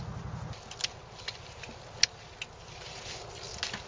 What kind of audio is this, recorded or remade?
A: recorded